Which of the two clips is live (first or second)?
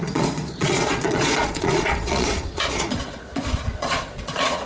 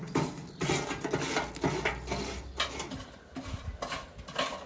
second